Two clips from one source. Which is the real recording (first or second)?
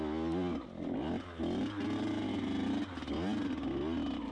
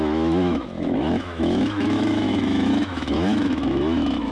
first